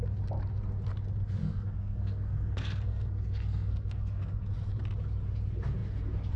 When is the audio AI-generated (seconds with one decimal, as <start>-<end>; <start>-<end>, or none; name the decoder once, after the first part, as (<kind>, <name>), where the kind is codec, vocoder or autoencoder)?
1.4-4.4 (codec, SNAC)

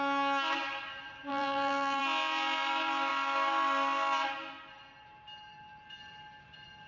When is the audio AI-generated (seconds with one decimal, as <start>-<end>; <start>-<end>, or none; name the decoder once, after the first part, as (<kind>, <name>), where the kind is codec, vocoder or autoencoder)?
1.3-2.0 (vocoder, BigVGAN v2)

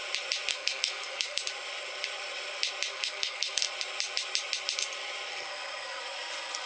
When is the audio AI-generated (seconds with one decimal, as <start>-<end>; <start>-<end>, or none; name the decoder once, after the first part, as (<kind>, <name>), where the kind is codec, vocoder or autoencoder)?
0.5-1.4 (codec, SNAC); 2.9-3.7; 5.3-6.0